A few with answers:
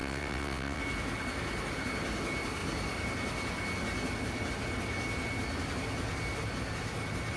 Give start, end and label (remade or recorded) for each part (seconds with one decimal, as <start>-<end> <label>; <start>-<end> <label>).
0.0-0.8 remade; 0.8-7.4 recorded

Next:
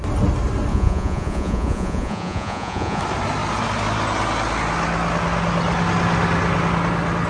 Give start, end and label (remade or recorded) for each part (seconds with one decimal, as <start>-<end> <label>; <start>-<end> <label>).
0.0-0.7 recorded; 0.7-3.0 remade; 3.0-7.3 recorded

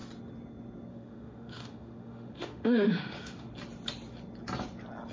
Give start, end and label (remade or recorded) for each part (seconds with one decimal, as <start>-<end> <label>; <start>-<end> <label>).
0.0-0.9 recorded; 0.9-3.5 remade; 3.5-5.1 recorded

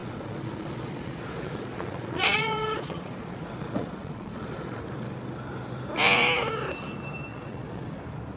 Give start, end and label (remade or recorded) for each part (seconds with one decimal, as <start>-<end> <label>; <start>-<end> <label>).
0.0-4.8 remade; 4.8-7.3 recorded; 7.3-8.0 remade; 8.0-8.4 recorded

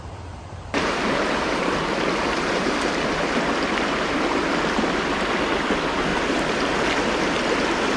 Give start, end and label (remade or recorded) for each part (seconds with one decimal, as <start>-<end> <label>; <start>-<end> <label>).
0.0-8.0 recorded